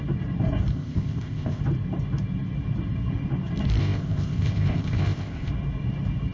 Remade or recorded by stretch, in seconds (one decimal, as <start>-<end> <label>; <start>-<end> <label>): 0.0-0.7 recorded; 0.7-1.6 remade; 1.6-3.8 recorded; 3.8-5.5 remade; 5.5-6.3 recorded